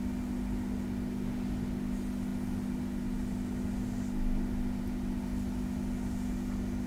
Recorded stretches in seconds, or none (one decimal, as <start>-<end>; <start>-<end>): 0.0-6.9